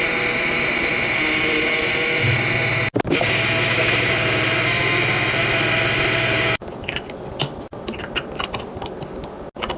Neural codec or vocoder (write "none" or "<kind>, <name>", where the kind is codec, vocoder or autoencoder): none